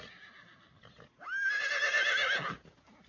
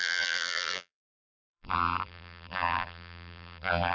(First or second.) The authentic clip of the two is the first